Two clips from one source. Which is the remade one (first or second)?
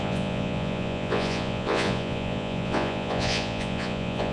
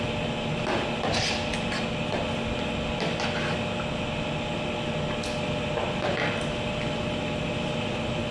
first